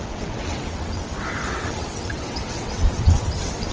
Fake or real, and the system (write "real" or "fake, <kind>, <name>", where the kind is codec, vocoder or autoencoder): fake, vocoder, WaveNeXt